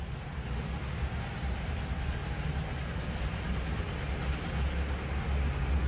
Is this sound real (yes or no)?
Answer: yes